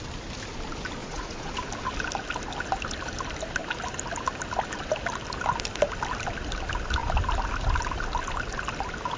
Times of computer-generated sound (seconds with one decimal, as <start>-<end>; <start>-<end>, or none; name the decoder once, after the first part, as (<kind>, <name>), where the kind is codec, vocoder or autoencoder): 1.0-1.5 (vocoder, Vocos)